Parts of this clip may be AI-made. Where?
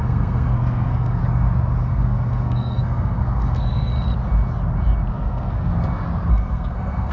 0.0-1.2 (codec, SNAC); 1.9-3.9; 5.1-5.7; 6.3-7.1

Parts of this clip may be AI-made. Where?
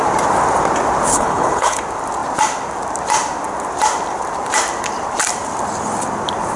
1.1-1.8 (codec, HILCodec)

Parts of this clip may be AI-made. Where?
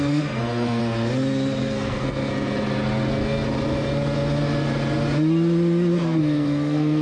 0.0-0.8 (codec, SNAC); 1.6-2.3; 6.2-7.0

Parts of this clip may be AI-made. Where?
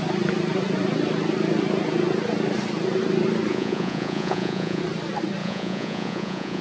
3.5-4.8 (vocoder, Vocos); 5.4-6.6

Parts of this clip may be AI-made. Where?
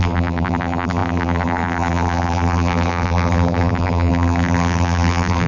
0.0-5.5 (vocoder, BigVGAN v2)